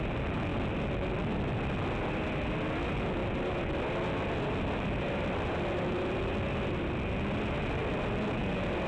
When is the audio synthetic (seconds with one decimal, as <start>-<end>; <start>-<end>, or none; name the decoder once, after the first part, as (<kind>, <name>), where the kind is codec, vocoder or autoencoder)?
none